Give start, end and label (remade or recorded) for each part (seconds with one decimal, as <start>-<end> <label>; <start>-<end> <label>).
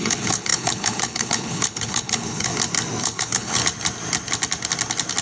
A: 0.0-2.5 remade; 2.5-3.0 recorded; 3.0-3.6 remade; 3.6-5.2 recorded